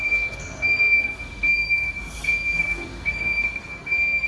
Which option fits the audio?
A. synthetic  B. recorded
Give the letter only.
A